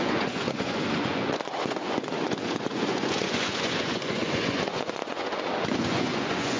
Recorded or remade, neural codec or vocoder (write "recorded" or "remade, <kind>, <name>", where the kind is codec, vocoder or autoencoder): remade, vocoder, Vocos